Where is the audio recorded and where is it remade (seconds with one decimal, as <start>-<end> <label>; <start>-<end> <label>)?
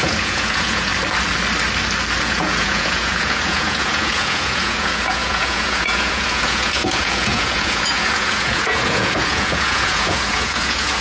0.0-0.9 remade; 0.9-2.2 recorded; 2.2-11.0 remade